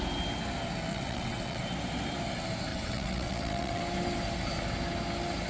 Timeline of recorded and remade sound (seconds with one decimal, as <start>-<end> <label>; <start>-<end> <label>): 0.0-0.9 recorded; 0.9-1.6 remade; 1.6-2.7 recorded; 2.7-3.8 remade; 3.8-5.5 recorded